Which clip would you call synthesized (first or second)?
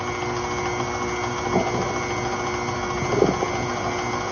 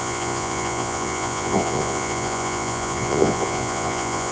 second